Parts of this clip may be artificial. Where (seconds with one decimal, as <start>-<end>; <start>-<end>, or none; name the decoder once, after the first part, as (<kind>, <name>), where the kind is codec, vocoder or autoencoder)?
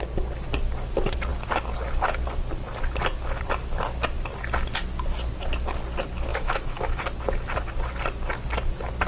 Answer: 6.3-7.0 (autoencoder, DAC-VAE)